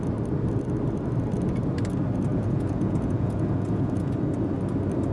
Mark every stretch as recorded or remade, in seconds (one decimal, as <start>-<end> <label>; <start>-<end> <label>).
0.0-2.3 recorded; 2.3-4.1 remade; 4.1-5.1 recorded